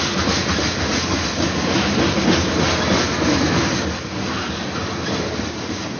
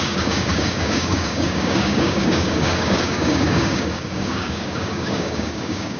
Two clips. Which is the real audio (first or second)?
first